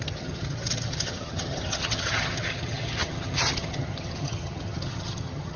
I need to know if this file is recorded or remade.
remade